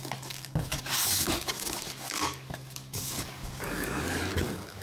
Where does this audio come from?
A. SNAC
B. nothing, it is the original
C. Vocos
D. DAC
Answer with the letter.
D